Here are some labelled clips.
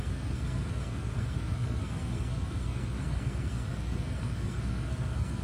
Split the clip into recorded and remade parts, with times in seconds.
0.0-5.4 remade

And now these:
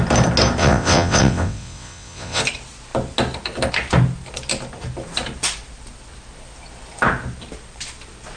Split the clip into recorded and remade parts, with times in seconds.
0.0-0.6 recorded; 0.6-2.4 remade; 2.4-8.4 recorded

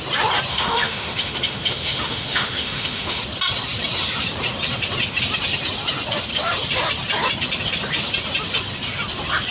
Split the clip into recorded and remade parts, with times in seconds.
0.0-0.5 recorded; 0.5-3.2 remade; 3.2-9.5 recorded